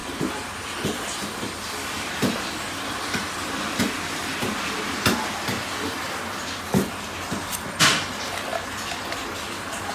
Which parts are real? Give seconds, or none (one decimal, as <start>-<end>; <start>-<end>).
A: 3.8-8.5; 9.1-9.9